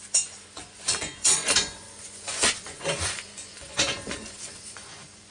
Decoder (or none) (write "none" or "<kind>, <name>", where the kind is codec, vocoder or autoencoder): vocoder, Vocos